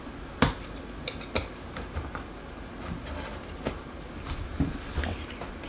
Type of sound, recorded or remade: recorded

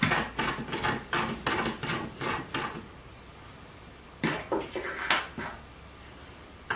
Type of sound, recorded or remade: recorded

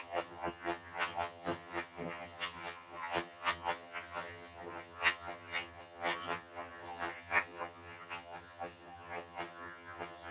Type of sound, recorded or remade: remade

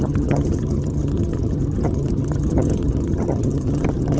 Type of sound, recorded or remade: remade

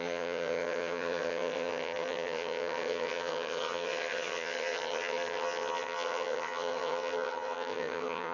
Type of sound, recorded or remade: remade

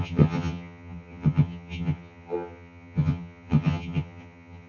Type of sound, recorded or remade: remade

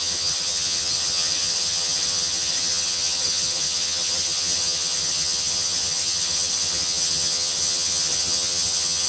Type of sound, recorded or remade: remade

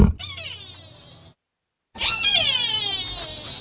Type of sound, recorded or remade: recorded